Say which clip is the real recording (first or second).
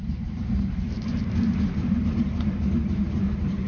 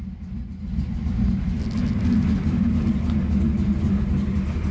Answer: second